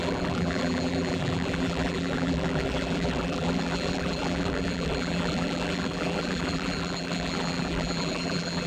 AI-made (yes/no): yes